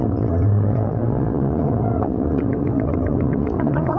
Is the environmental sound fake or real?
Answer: fake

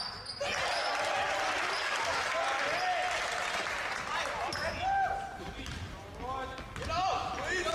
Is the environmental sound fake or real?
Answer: real